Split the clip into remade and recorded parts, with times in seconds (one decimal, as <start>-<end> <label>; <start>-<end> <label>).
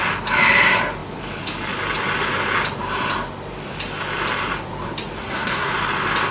0.0-5.2 recorded; 5.2-5.7 remade; 5.7-6.3 recorded